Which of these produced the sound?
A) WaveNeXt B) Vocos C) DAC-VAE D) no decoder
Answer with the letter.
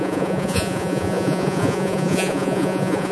B